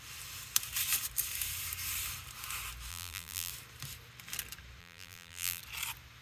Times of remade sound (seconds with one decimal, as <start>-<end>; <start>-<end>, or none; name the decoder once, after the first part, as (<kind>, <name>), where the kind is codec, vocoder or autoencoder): 2.9-3.5 (vocoder, BigVGAN v2); 4.8-5.6